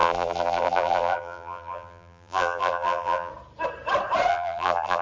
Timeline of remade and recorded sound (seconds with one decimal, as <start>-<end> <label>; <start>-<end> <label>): 0.0-3.3 remade; 3.3-4.3 recorded; 4.3-5.0 remade